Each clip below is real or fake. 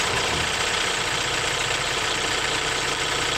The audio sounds fake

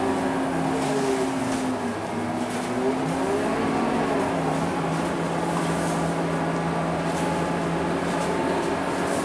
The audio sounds real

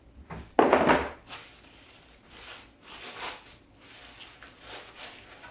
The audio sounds real